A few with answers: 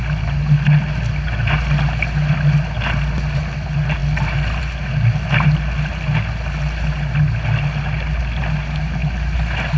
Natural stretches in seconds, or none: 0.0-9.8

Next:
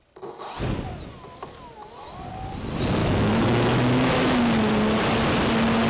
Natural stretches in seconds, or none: 0.0-3.0; 4.4-5.9

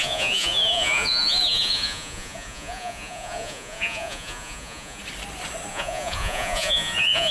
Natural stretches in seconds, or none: 5.0-5.7